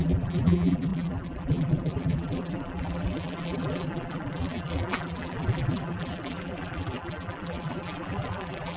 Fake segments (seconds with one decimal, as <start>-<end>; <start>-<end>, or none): 0.0-8.8